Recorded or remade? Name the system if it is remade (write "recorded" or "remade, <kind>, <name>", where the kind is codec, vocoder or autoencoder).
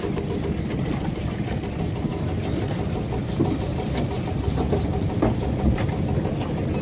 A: recorded